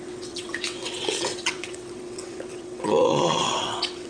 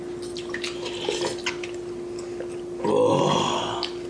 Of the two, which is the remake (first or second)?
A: first